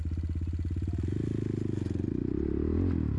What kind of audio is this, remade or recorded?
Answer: recorded